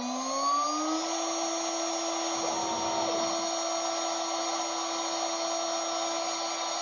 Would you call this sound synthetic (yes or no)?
no